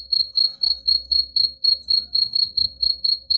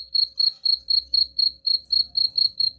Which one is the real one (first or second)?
second